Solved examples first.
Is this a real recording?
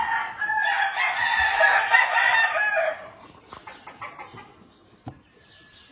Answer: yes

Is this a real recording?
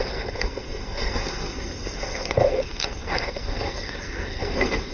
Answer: no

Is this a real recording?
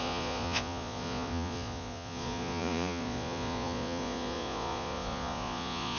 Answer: no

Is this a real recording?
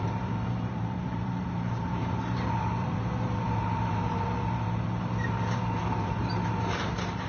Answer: no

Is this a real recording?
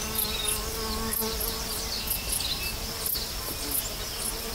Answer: yes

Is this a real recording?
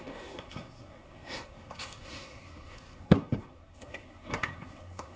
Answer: no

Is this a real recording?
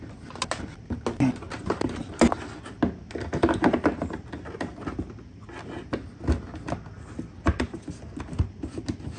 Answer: yes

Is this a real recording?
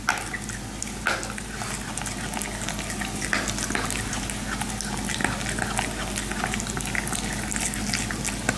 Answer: yes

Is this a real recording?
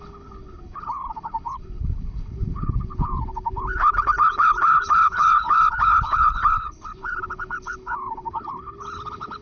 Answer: no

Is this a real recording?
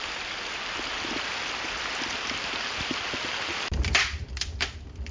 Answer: yes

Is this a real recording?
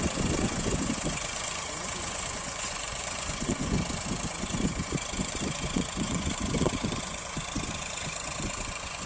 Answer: no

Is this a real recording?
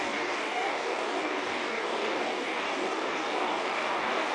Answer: no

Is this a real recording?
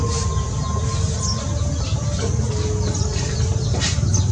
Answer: yes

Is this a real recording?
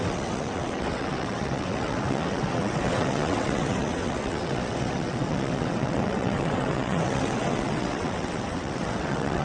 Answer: no